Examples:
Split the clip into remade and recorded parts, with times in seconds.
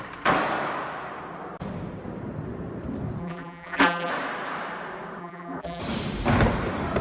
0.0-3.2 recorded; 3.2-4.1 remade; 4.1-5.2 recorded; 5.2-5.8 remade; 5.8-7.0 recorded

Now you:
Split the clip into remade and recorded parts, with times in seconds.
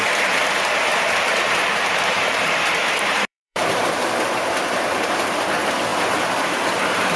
0.0-0.9 recorded; 0.9-5.2 remade; 5.2-7.2 recorded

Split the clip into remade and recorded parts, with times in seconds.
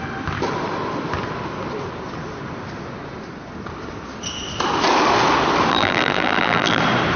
0.0-5.7 recorded; 5.7-6.8 remade; 6.8-7.2 recorded